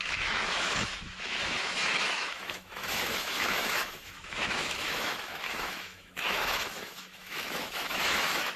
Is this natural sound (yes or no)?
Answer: no